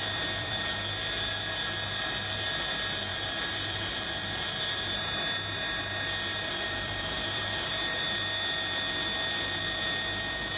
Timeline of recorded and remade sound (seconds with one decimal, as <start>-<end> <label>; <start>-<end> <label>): 0.0-0.7 remade; 0.7-3.1 recorded; 3.1-4.9 remade; 4.9-6.3 recorded; 6.3-7.7 remade; 7.7-10.6 recorded